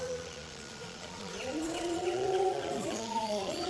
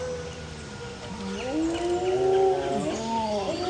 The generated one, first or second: first